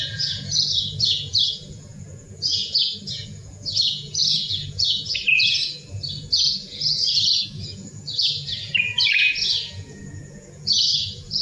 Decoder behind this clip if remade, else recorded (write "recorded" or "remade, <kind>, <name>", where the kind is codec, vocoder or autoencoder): remade, vocoder, Vocos